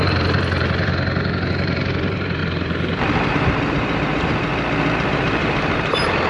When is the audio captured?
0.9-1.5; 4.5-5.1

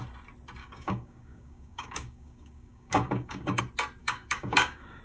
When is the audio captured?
0.0-0.6; 3.6-4.0

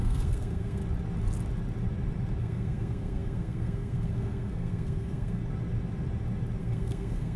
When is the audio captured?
0.8-2.4; 5.4-6.6

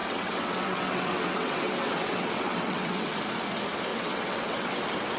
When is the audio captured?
3.1-3.9; 4.8-5.2

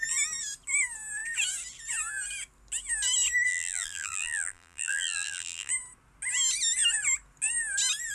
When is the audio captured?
0.0-3.5; 5.7-8.1

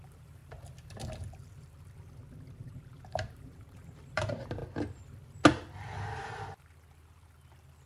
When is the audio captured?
0.4-2.6; 4.6-7.9

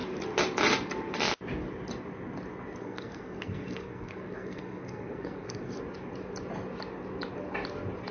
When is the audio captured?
0.0-2.8; 5.8-8.1

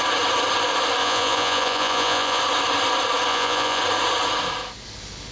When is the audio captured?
0.0-1.0; 2.4-3.3; 3.8-5.3